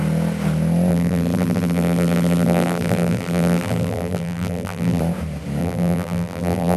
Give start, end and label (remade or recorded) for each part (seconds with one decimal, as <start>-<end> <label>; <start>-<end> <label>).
0.0-0.9 recorded; 0.9-5.0 remade; 5.0-5.6 recorded; 5.6-6.8 remade